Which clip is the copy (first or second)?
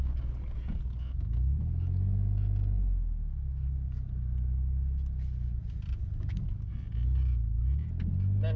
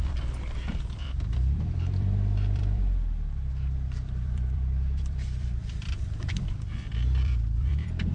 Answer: second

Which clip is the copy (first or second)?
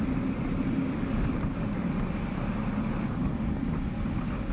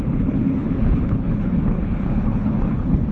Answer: second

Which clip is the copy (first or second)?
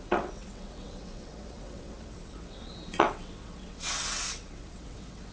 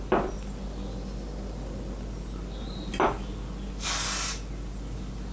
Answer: first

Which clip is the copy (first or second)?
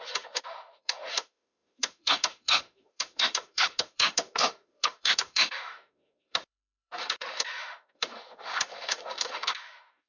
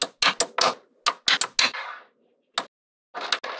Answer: first